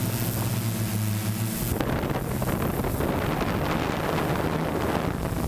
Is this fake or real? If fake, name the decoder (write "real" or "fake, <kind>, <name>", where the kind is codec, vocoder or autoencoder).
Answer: real